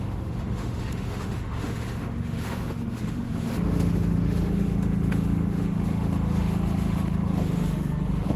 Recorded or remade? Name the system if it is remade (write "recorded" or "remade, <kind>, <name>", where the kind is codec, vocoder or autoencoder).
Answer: remade, autoencoder, DAC-VAE